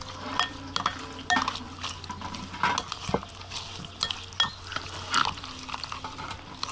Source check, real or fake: real